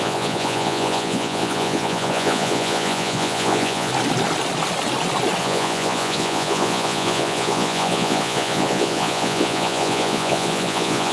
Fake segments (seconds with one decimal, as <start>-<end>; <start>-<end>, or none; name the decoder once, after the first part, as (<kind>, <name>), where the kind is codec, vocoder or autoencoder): 0.0-3.9 (vocoder, Vocos); 5.4-11.1